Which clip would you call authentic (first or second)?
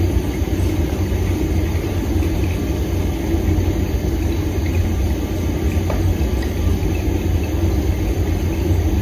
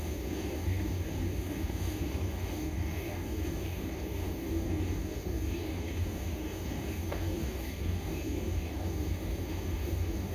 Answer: first